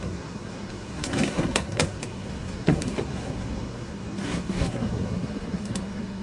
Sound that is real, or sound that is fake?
fake